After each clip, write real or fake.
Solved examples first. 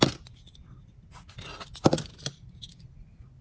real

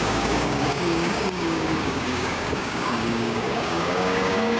fake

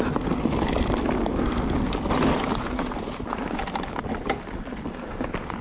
real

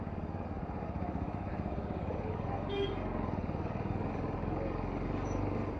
fake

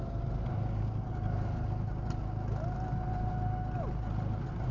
real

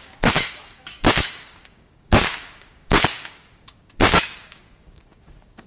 fake